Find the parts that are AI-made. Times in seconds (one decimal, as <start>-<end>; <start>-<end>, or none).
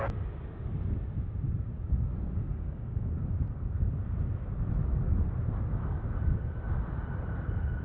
2.5-3.1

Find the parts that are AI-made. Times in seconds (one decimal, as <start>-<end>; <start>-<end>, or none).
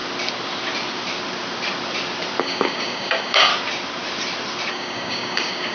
2.4-3.5; 4.7-5.7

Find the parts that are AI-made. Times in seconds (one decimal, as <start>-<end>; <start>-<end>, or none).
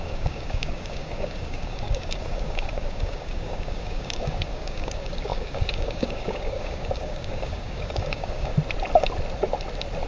0.0-8.5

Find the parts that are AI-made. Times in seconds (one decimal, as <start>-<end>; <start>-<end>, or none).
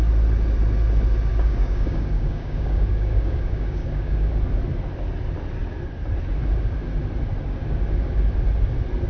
1.3-4.3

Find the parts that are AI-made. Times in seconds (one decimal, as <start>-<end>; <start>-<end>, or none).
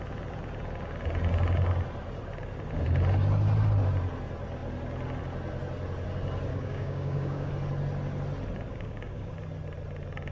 6.5-7.5; 8.7-9.3